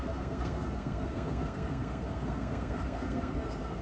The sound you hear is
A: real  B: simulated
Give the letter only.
B